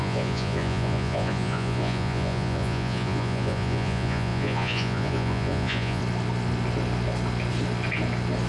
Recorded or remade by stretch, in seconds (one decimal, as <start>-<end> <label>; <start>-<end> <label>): 0.0-6.0 remade; 6.0-8.5 recorded